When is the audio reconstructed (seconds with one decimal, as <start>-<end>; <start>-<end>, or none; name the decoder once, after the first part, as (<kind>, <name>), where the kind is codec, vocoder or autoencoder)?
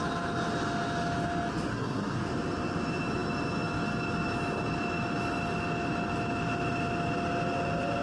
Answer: 1.7-2.2 (codec, SNAC)